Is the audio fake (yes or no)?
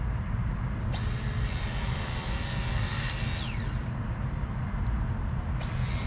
no